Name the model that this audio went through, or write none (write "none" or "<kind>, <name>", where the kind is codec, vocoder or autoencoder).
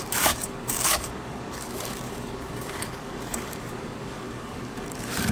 codec, DAC